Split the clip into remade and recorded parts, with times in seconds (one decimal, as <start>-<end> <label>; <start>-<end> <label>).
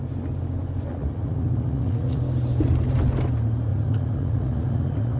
0.0-0.9 recorded; 0.9-2.2 remade; 2.2-3.7 recorded; 3.7-5.2 remade